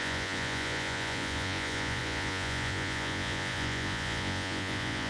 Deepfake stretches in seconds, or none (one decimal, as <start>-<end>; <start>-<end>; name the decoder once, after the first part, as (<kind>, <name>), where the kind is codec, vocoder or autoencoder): 0.0-5.1 (vocoder, Vocos)